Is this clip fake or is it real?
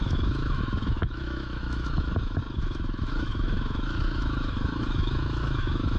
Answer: fake